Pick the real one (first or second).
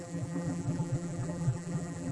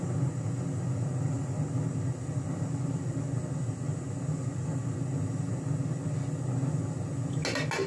second